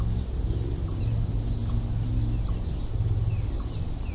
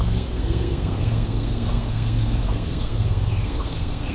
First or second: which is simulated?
second